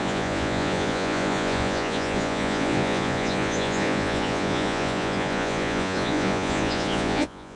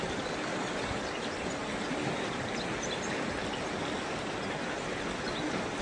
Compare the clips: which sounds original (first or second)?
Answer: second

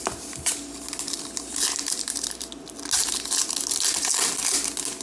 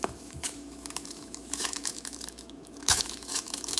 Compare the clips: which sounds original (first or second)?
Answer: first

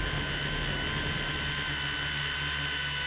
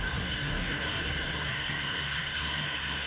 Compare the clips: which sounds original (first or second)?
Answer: first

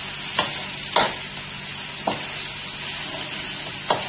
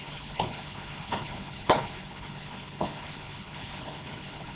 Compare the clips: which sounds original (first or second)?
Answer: first